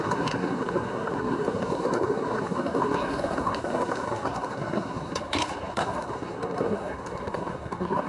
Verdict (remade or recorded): remade